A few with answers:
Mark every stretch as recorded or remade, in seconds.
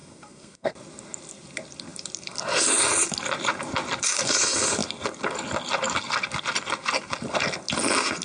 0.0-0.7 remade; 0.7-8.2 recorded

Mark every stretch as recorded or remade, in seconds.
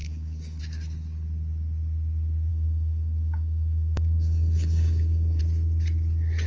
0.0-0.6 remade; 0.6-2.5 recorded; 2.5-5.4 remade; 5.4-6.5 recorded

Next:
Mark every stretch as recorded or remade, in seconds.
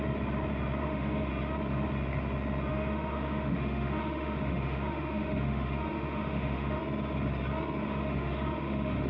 0.0-0.8 recorded; 0.8-1.3 remade; 1.3-2.7 recorded; 2.7-6.8 remade; 6.8-7.8 recorded; 7.8-9.1 remade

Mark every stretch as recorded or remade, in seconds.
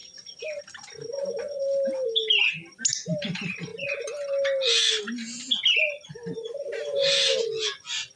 0.0-8.2 recorded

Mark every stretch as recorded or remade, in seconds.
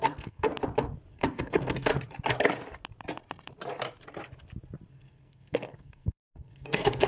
0.0-0.5 remade; 0.5-1.1 recorded; 1.1-1.9 remade; 1.9-4.9 recorded; 4.9-7.1 remade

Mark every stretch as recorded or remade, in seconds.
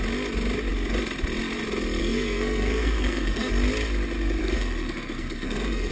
0.0-2.0 recorded; 2.0-3.5 remade; 3.5-4.4 recorded; 4.4-5.9 remade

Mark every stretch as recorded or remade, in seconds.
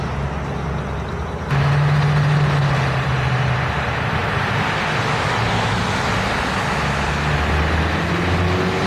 0.0-8.9 recorded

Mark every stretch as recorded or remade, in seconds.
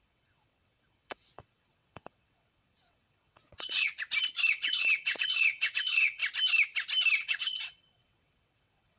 0.0-3.9 remade; 3.9-4.5 recorded; 4.5-6.2 remade; 6.2-7.2 recorded; 7.2-9.0 remade